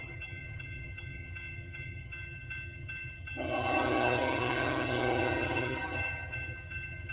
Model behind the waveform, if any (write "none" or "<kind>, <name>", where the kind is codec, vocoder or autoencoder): vocoder, HiFi-GAN